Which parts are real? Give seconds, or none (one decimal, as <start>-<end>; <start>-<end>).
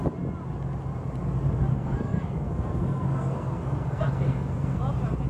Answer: 0.0-1.7; 4.8-5.3